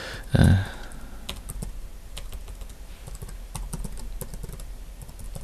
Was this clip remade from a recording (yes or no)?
no